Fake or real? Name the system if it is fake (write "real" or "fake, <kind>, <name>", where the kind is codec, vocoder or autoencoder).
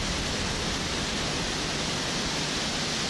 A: real